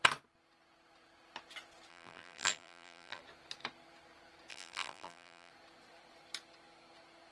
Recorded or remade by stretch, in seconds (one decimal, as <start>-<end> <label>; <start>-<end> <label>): 0.0-1.9 recorded; 1.9-3.2 remade; 3.2-4.5 recorded; 4.5-5.5 remade; 5.5-7.3 recorded